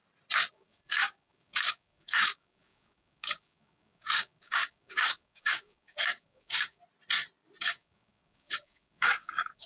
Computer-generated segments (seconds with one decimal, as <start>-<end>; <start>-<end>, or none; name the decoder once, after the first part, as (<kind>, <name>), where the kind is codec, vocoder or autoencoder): 0.5-6.8 (codec, DAC); 7.6-9.7